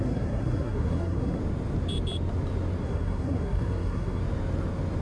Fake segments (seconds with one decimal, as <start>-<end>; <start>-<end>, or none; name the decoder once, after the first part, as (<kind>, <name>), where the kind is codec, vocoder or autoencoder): 0.0-1.4 (codec, SNAC); 2.8-4.2

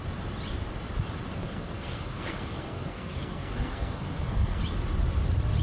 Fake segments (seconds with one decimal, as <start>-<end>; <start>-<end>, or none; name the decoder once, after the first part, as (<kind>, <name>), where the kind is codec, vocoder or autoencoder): 1.4-4.6 (codec, SNAC)

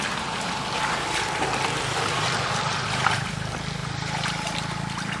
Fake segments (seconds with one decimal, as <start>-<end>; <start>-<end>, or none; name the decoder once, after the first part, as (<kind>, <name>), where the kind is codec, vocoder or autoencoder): none